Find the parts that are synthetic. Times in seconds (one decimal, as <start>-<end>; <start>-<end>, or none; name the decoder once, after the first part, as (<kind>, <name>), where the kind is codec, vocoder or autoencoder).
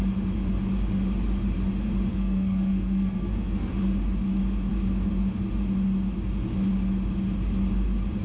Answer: 2.1-3.7 (codec, SNAC)